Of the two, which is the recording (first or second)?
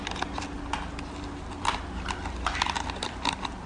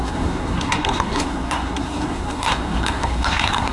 first